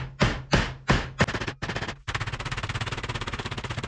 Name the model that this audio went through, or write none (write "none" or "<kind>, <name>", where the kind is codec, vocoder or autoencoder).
none